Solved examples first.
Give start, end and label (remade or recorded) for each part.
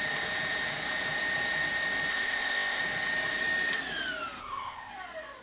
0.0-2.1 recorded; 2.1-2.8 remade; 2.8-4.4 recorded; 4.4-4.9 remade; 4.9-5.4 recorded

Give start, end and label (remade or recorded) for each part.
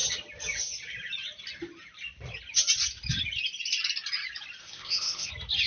0.0-4.6 recorded; 4.6-5.3 remade; 5.3-5.7 recorded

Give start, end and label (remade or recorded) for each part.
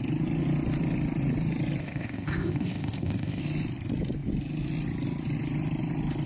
0.0-1.8 recorded; 1.8-3.4 remade; 3.4-6.3 recorded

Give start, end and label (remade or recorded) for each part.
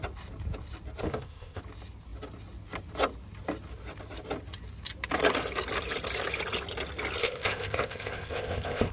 0.0-1.0 recorded; 1.0-1.6 remade; 1.6-7.2 recorded; 7.2-8.9 remade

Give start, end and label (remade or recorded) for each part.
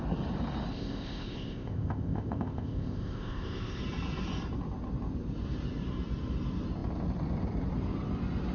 0.0-0.7 recorded; 0.7-3.8 remade; 3.8-8.5 recorded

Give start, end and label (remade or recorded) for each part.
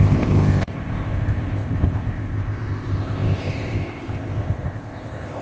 0.0-5.4 remade